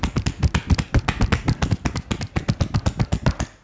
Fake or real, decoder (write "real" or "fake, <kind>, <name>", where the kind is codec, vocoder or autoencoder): real